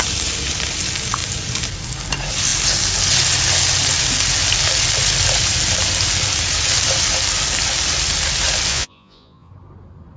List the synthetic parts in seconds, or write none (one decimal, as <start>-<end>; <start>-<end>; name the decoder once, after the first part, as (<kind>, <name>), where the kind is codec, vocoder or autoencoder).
8.7-9.5 (vocoder, Vocos)